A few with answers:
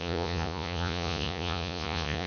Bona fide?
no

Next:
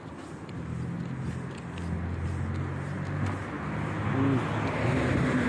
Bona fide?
yes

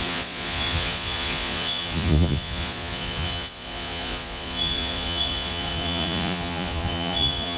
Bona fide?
no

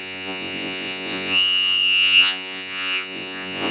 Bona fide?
no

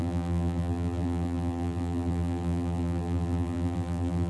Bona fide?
no